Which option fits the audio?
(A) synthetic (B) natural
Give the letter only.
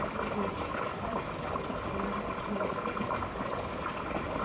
B